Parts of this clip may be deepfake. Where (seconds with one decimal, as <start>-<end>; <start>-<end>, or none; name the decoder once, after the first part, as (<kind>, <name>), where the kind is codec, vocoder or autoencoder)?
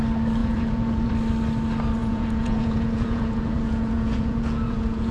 0.4-1.1 (vocoder, Vocos); 2.0-5.1